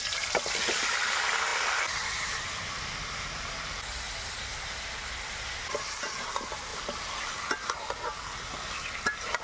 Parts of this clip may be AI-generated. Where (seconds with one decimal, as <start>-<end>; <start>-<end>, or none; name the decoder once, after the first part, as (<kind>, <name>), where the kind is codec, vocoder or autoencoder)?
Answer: 1.5-3.5 (vocoder, BigVGAN v2); 6.7-7.4